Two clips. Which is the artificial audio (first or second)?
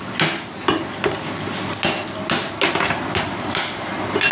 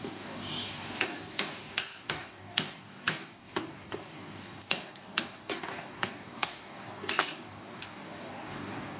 second